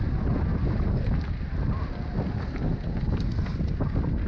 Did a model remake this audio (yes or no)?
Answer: no